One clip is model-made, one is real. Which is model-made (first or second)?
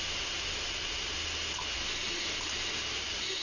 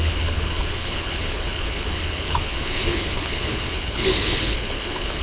second